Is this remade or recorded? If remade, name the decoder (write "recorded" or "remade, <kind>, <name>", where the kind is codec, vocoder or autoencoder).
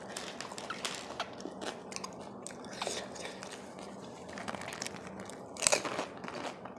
recorded